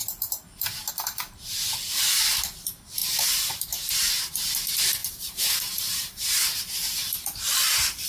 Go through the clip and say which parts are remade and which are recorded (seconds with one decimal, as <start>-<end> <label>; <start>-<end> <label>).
0.0-0.9 remade; 0.9-3.0 recorded; 3.0-3.9 remade; 3.9-5.0 recorded; 5.0-6.6 remade; 6.6-8.1 recorded